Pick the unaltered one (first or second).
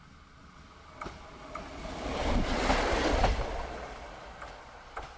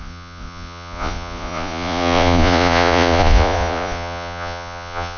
first